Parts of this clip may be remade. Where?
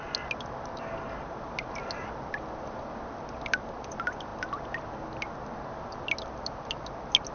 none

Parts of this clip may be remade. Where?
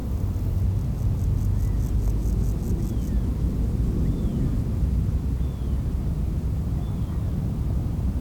none